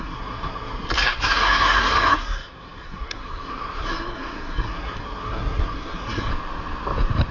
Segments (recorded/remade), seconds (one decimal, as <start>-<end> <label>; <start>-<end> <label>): 0.0-6.3 remade; 6.3-7.3 recorded